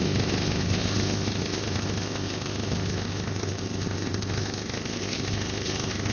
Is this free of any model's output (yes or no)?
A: no